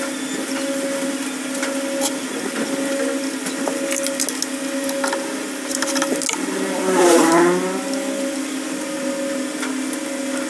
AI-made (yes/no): no